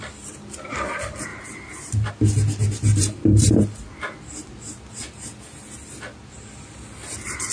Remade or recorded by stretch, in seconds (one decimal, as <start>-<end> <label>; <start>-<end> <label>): 0.0-1.3 recorded; 1.3-2.1 remade; 2.1-2.9 recorded; 2.9-3.6 remade; 3.6-7.5 recorded